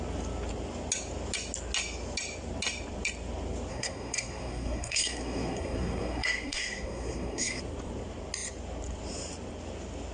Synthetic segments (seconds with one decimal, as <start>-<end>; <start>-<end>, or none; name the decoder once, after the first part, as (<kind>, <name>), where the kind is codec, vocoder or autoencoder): 3.7-7.6 (codec, SNAC)